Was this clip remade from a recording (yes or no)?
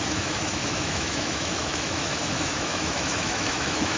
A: yes